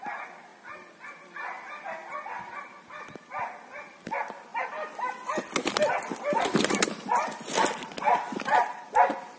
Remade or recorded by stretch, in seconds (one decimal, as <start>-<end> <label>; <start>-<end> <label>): 0.0-9.4 recorded